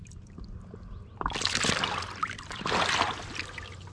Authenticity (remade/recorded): recorded